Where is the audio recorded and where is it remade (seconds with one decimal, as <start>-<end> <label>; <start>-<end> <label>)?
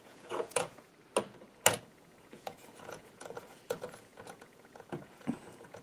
0.0-0.9 remade; 0.9-1.8 recorded; 1.8-5.8 remade